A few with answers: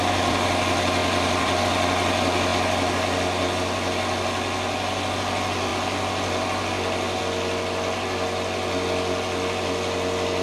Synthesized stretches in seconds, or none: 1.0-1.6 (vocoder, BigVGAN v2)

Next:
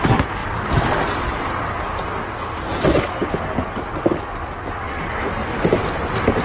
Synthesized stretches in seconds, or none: 0.4-1.2 (vocoder, BigVGAN v2)

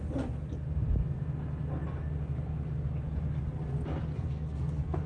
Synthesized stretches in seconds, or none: 4.1-5.1 (codec, SNAC)

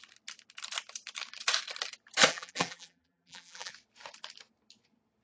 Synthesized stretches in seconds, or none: 2.3-3.7 (vocoder, BigVGAN v2)